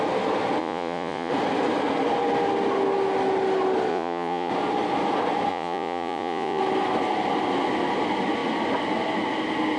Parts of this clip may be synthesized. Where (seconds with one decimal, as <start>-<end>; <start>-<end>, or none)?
0.6-1.3; 3.9-4.5; 5.5-6.6